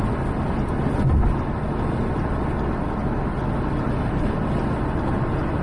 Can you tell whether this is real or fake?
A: real